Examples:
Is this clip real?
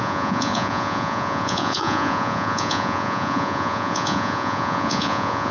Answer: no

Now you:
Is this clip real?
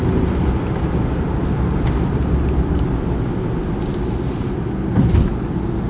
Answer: yes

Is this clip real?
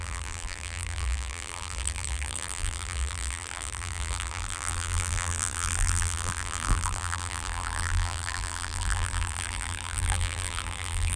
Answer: no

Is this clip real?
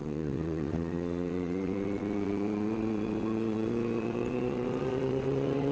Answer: no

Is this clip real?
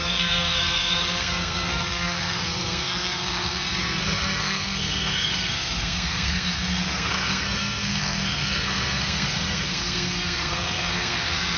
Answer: no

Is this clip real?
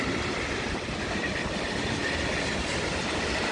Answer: yes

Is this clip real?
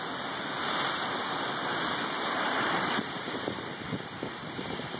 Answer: no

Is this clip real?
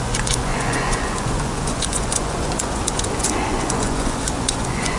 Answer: no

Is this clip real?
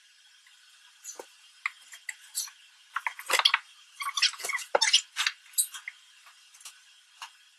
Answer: yes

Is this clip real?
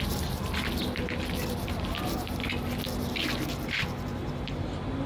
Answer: yes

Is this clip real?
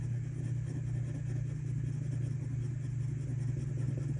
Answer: yes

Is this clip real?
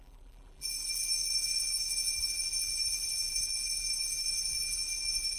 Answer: no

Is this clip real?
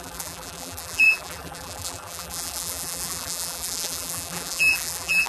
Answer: no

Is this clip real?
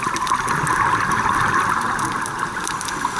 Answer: yes